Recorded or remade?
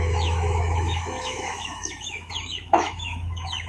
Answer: remade